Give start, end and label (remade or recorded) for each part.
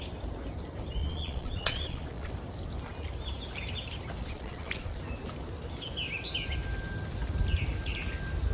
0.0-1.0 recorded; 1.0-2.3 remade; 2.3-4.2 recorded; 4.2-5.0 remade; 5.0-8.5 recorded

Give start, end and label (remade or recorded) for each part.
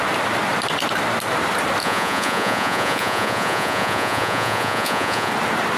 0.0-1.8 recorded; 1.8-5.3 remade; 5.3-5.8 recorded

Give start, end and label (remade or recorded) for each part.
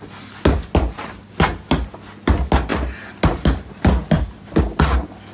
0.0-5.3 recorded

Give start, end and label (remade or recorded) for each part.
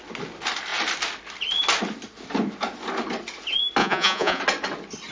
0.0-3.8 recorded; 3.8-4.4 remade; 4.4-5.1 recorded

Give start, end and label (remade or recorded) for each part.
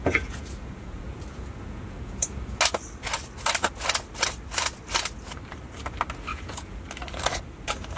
0.0-2.6 remade; 2.6-6.3 recorded; 6.3-6.8 remade; 6.8-8.0 recorded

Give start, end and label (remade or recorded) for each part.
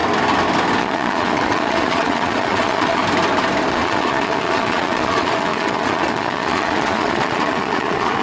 0.0-0.8 recorded; 0.8-3.0 remade; 3.0-3.7 recorded; 3.7-8.2 remade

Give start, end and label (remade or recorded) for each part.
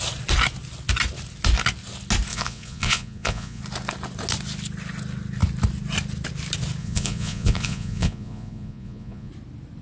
0.0-2.3 recorded; 2.3-3.6 remade; 3.6-6.8 recorded; 6.8-9.3 remade; 9.3-9.8 recorded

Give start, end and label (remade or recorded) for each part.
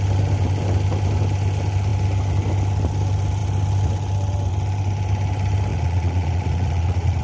0.0-5.7 recorded; 5.7-7.2 remade